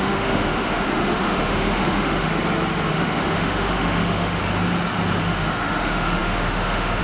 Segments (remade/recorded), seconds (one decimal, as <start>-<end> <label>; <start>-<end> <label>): 0.0-2.3 remade; 2.3-2.9 recorded; 2.9-4.4 remade; 4.4-5.2 recorded; 5.2-7.0 remade